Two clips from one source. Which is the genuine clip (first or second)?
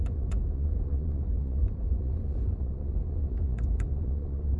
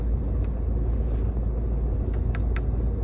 second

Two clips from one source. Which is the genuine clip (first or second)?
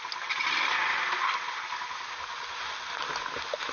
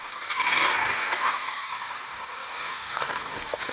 first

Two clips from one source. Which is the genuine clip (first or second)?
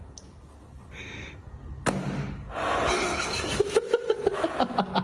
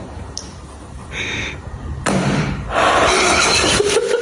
first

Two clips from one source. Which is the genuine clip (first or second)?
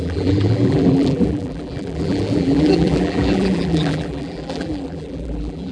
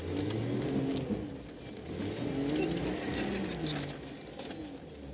second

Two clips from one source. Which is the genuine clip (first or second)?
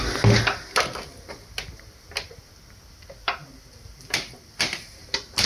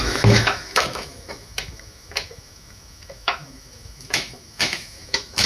first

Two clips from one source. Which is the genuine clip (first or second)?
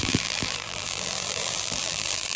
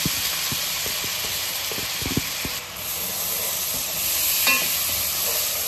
second